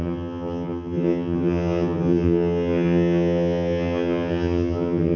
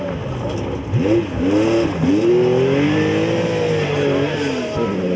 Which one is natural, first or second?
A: second